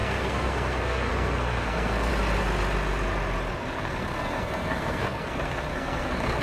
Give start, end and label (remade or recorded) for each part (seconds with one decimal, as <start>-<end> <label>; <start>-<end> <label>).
0.0-2.1 remade; 2.1-3.7 recorded; 3.7-6.4 remade